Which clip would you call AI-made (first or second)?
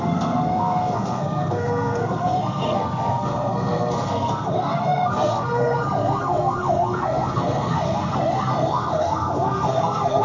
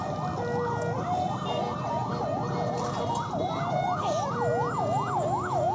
first